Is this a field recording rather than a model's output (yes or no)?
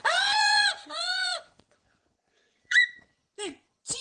no